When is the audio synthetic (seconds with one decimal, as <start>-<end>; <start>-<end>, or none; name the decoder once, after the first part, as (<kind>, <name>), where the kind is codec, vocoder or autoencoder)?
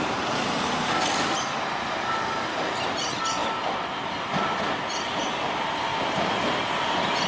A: none